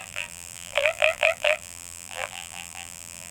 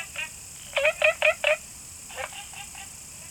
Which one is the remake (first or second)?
first